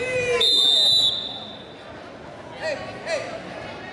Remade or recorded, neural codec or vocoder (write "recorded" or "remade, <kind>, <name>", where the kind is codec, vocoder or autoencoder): recorded